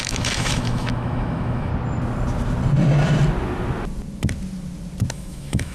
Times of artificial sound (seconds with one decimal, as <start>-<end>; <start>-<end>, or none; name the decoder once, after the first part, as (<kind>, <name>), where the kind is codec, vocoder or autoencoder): 0.0-1.7 (autoencoder, DAC-VAE); 5.1-5.7